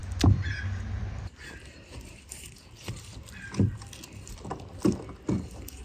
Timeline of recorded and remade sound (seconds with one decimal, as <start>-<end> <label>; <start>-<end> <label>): 0.0-5.8 recorded